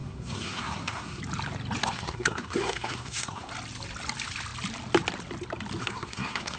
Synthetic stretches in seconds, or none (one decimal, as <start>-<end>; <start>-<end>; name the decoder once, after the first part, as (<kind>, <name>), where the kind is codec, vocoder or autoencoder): 0.0-1.2 (codec, SNAC); 1.8-3.5; 5.8-6.6